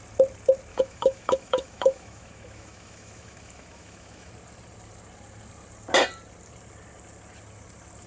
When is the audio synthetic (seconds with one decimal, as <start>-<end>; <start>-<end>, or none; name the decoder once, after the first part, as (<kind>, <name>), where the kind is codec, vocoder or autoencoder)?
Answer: 0.7-4.3 (autoencoder, DAC-VAE)